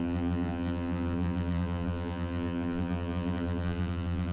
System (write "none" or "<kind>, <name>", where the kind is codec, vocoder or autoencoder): vocoder, BigVGAN v2